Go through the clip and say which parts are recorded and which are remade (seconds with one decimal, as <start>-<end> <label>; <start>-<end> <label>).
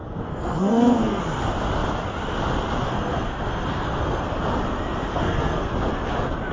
0.0-1.2 remade; 1.2-2.8 recorded; 2.8-4.2 remade; 4.2-5.1 recorded; 5.1-5.7 remade; 5.7-6.5 recorded